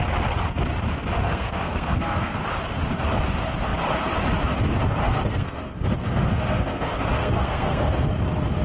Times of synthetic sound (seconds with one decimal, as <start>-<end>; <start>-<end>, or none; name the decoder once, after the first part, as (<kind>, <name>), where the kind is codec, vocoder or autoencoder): 1.3-2.4 (codec, SNAC); 5.0-8.1